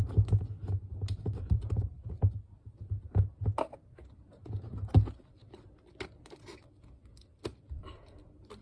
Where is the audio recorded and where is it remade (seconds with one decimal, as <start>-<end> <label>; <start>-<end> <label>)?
0.0-0.6 recorded; 0.6-2.3 remade; 2.3-8.6 recorded